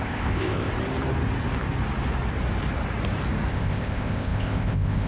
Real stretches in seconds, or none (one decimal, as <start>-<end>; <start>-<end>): 0.7-3.5